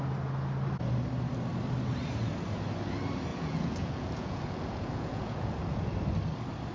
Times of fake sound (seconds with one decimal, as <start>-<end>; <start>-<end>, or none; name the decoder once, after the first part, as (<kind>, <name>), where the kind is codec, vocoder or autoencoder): 3.3-5.9 (vocoder, Vocos)

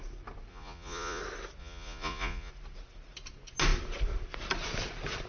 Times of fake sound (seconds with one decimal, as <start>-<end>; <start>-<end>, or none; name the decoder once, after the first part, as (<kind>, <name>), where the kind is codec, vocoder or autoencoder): 0.5-1.2 (vocoder, Vocos); 1.6-2.5

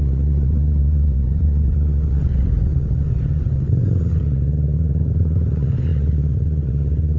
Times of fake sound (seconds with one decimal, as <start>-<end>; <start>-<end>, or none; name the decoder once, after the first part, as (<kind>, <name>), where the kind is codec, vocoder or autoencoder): 0.0-7.2 (vocoder, Vocos)

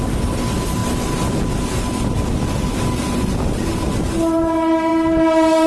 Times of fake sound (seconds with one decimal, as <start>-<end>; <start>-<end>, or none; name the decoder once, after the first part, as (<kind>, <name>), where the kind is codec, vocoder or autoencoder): none